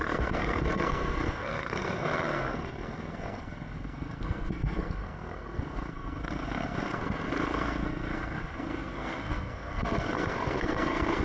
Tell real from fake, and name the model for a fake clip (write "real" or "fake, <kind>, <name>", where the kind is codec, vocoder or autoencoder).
fake, codec, SNAC